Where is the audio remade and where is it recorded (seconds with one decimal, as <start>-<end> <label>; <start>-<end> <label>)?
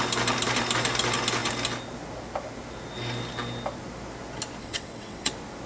0.0-4.6 recorded; 4.6-5.3 remade; 5.3-5.7 recorded